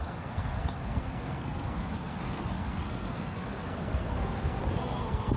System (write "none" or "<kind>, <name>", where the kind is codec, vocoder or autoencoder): codec, SNAC